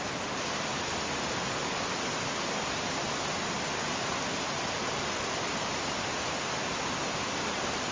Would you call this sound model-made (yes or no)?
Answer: no